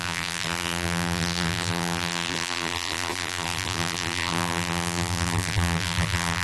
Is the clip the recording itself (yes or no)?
no